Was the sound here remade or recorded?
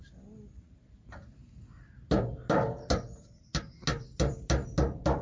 recorded